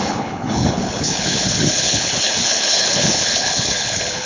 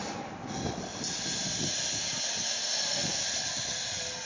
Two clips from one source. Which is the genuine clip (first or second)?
second